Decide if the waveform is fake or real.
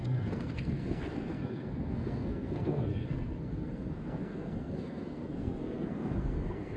fake